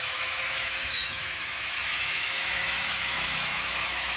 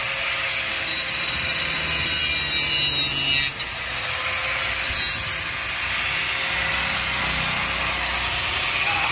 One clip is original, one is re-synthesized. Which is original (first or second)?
second